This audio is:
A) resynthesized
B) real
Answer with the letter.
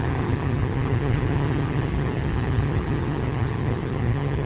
A